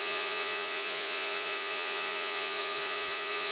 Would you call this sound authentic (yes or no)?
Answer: no